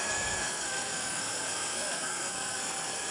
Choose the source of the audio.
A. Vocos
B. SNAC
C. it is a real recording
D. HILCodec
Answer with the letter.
B